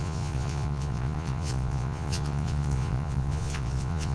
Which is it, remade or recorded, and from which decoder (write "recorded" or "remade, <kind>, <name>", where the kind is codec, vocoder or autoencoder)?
remade, vocoder, Vocos